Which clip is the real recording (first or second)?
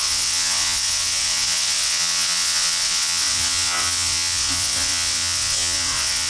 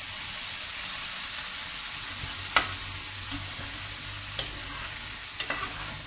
second